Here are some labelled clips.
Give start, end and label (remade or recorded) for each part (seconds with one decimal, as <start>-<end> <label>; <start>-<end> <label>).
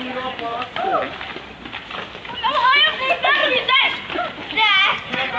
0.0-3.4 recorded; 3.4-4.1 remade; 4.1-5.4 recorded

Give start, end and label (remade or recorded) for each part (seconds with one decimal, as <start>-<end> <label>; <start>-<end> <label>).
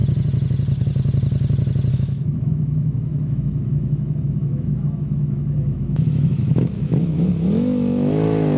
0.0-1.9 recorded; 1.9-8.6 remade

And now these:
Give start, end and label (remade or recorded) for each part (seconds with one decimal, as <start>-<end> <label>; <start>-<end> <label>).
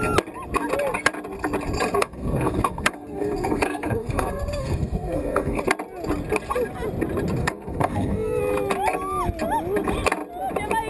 0.0-2.0 recorded; 2.0-5.6 remade; 5.6-7.4 recorded; 7.4-8.4 remade; 8.4-10.9 recorded